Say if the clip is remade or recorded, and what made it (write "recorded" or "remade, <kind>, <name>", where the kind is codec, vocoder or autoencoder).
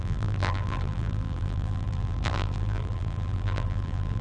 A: remade, vocoder, BigVGAN v2